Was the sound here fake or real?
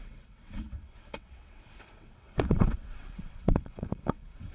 fake